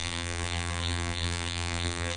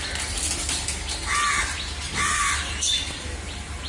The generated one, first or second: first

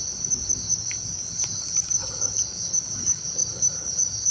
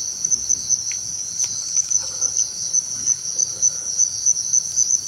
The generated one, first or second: first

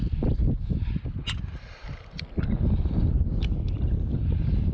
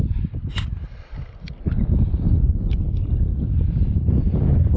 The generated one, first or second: second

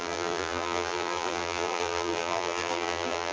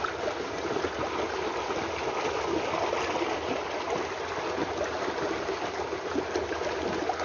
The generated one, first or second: first